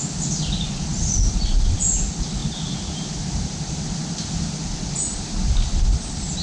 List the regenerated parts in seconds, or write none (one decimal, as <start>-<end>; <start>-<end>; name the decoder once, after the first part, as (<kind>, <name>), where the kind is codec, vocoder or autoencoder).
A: none